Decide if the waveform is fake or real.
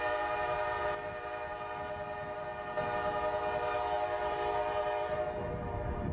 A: real